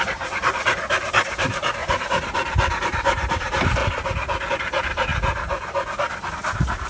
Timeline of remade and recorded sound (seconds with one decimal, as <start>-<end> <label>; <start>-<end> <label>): 0.0-1.8 remade; 1.8-2.8 recorded; 2.8-3.8 remade; 3.8-4.5 recorded; 4.5-5.1 remade; 5.1-6.3 recorded; 6.3-6.9 remade